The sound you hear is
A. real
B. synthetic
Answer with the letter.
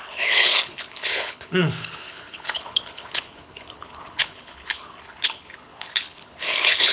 B